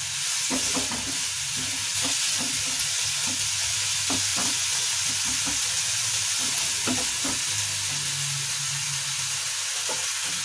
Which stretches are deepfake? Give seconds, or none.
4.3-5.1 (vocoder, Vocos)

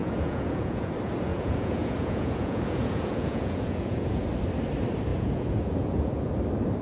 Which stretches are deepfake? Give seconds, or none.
0.0-0.9 (vocoder, Vocos); 1.3-4.3; 5.1-6.3

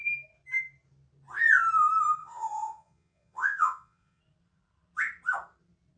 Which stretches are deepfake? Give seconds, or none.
2.2-4.2 (vocoder, Vocos)

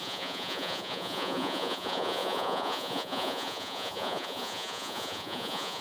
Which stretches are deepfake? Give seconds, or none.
0.0-5.8 (vocoder, Vocos)

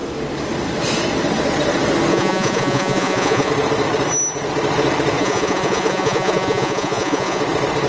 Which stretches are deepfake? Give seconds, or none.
2.1-3.5 (vocoder, Vocos); 5.2-7.4